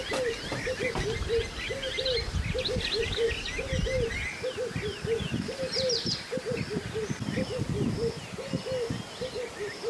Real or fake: real